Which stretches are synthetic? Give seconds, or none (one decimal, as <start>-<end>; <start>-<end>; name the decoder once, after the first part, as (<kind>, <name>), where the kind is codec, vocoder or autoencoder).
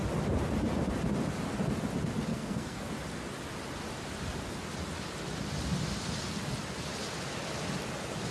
2.3-2.9 (codec, SNAC)